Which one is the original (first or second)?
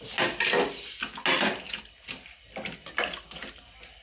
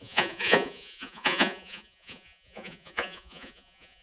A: first